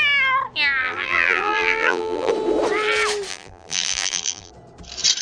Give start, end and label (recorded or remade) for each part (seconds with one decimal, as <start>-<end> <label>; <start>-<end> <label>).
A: 0.0-0.8 recorded; 0.8-2.3 remade; 2.3-3.3 recorded; 3.3-4.5 remade; 4.5-5.2 recorded